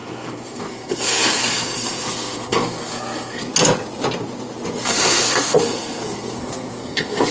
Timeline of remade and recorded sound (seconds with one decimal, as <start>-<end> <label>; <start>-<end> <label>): 0.0-3.5 remade; 3.5-4.8 recorded; 4.8-7.3 remade